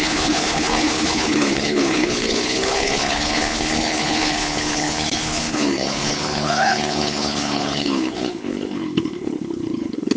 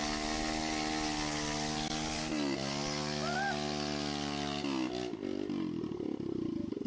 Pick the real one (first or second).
second